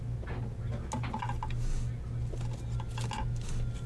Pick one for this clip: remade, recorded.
recorded